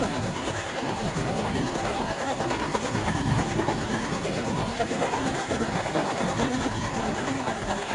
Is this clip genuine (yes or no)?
no